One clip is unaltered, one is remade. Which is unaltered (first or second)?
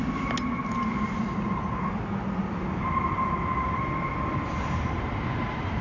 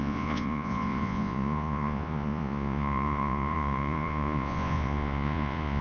first